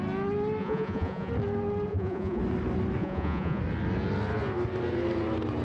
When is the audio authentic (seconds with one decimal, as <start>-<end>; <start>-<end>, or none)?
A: 0.0-0.6; 1.3-1.9; 2.4-3.0; 3.6-5.6